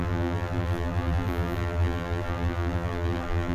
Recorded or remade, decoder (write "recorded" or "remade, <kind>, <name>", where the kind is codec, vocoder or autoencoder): remade, vocoder, BigVGAN v2